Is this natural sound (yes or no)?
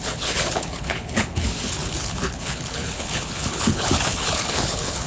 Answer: no